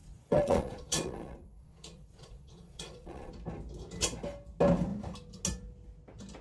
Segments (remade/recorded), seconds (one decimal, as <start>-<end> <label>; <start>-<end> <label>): 0.0-3.3 remade; 3.3-6.4 recorded